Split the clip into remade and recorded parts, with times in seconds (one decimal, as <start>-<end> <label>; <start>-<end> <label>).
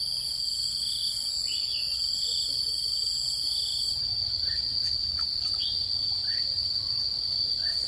0.0-7.9 recorded